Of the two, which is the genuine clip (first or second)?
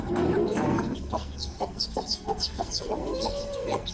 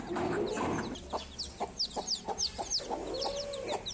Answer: second